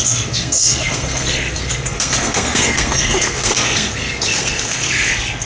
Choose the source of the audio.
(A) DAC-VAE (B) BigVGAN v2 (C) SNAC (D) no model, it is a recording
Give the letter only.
C